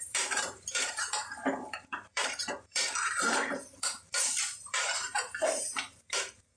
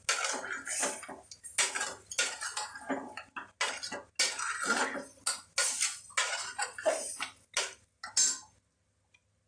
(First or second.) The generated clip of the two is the first